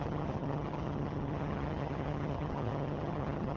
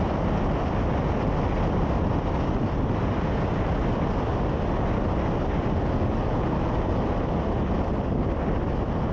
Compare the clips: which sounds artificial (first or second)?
first